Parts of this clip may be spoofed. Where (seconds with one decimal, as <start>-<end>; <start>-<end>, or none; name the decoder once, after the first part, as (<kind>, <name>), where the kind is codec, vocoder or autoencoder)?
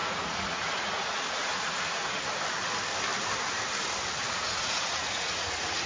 0.0-2.0 (vocoder, Vocos); 4.2-5.9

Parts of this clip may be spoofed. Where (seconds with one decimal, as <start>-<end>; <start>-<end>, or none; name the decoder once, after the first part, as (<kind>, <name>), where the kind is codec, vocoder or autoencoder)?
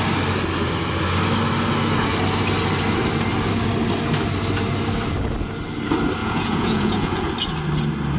6.2-7.3 (vocoder, Vocos)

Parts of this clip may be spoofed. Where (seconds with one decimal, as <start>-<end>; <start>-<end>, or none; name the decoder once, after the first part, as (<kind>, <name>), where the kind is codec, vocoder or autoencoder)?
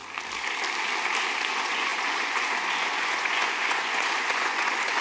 1.5-5.0 (vocoder, Vocos)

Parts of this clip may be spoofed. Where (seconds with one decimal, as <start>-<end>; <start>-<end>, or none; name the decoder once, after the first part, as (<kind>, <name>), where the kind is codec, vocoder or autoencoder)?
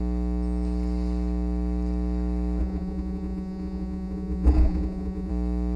2.6-5.3 (vocoder, Vocos)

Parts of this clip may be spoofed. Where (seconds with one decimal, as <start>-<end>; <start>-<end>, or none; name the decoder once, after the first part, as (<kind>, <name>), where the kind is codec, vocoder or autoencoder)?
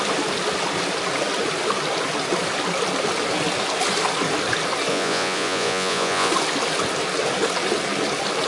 4.9-6.3 (vocoder, Vocos)